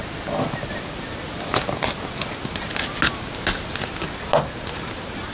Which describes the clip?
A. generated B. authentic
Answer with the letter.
B